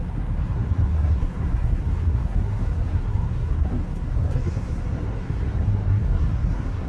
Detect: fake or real fake